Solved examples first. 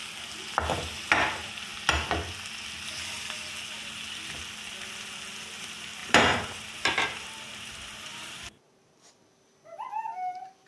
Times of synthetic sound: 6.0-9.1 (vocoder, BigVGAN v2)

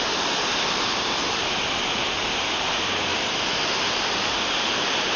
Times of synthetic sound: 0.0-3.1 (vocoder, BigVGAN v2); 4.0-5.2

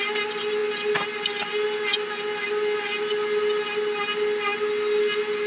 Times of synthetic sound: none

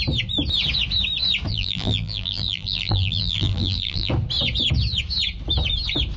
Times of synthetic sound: 1.5-4.1 (vocoder, BigVGAN v2)

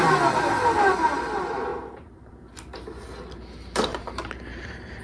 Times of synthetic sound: 1.7-2.3 (vocoder, BigVGAN v2); 3.9-5.0

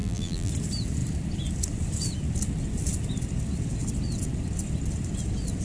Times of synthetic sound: 0.0-0.5 (vocoder, BigVGAN v2)

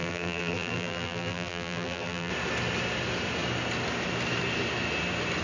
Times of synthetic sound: 0.0-2.3 (vocoder, BigVGAN v2)

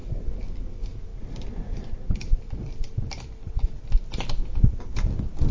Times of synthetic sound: 1.1-4.3 (vocoder, BigVGAN v2)